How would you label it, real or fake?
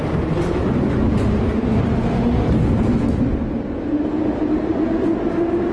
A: real